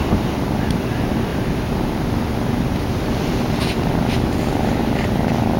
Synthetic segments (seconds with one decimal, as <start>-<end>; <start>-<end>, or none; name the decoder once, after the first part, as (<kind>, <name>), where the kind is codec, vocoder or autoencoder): none